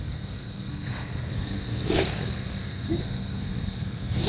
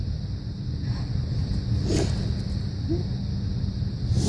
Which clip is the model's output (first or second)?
first